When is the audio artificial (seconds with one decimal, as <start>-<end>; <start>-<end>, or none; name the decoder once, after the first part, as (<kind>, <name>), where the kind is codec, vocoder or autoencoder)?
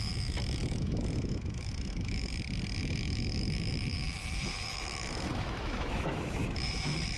0.6-2.3 (autoencoder, DAC-VAE); 2.8-7.2